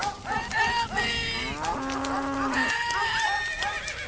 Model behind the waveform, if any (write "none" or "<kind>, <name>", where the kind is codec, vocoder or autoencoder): none